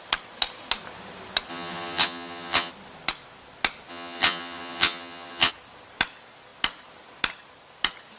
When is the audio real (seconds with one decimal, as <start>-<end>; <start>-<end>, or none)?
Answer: 0.0-1.5; 2.7-3.9; 5.5-8.2